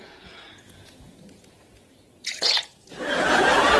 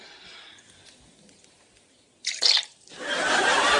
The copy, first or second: first